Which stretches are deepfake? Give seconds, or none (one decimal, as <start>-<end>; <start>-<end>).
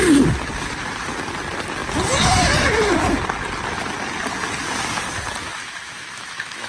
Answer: 5.4-6.7